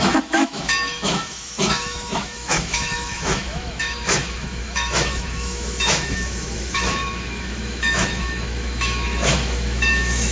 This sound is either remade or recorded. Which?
remade